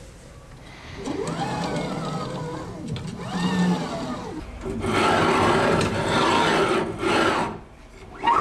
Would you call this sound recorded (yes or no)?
yes